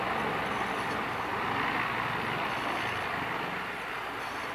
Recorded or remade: recorded